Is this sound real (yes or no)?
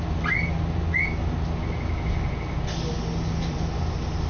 yes